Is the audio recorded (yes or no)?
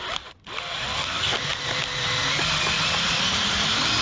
yes